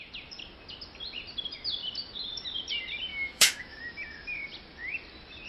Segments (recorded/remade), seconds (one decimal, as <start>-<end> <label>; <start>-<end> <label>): 0.0-3.1 recorded; 3.1-3.8 remade; 3.8-5.5 recorded